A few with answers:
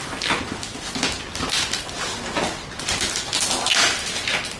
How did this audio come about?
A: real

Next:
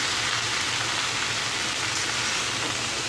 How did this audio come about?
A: real